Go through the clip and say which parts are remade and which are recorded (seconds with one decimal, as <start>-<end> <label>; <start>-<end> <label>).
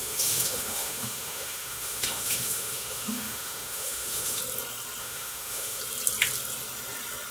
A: 0.0-4.4 remade; 4.4-5.0 recorded; 5.0-5.8 remade; 5.8-7.3 recorded